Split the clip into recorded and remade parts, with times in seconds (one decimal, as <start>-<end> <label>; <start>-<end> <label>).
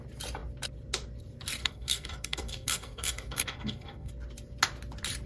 0.0-1.6 recorded; 1.6-4.1 remade; 4.1-5.3 recorded